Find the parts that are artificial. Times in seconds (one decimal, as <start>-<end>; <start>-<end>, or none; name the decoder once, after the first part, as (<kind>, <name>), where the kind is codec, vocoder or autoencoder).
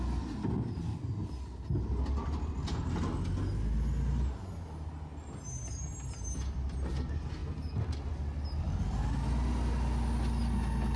none